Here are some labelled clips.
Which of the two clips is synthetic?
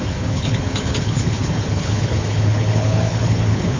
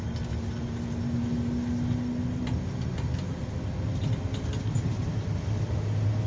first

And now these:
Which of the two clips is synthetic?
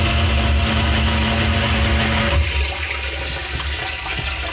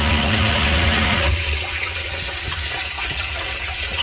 second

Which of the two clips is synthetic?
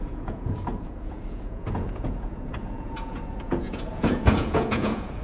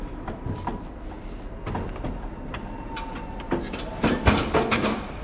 first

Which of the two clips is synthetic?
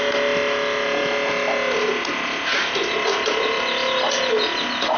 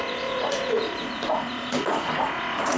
second